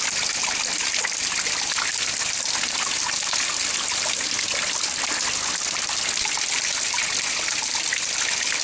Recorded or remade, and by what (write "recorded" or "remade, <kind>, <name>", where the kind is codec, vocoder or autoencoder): recorded